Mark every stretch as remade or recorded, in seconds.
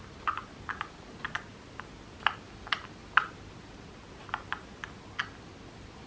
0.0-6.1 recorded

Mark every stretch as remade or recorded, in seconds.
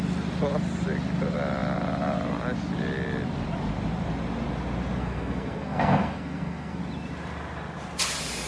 0.0-5.0 recorded; 5.0-6.8 remade; 6.8-8.5 recorded